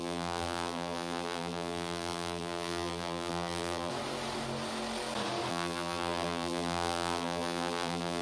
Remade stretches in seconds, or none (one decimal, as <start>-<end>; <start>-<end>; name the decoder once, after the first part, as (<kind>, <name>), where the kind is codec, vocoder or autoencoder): 0.0-3.9 (vocoder, BigVGAN v2); 5.5-8.2